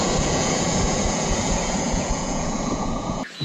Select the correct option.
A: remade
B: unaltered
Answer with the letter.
A